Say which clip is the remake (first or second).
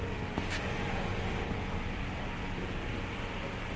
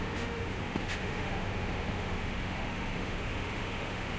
second